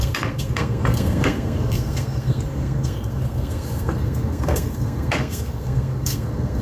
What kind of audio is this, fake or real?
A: fake